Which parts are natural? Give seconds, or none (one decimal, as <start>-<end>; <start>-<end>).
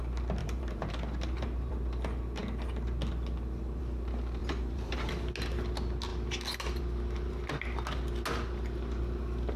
0.0-0.4; 1.7-4.4; 5.1-9.6